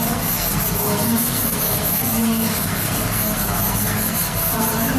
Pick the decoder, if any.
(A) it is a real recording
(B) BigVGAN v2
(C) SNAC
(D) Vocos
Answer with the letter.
C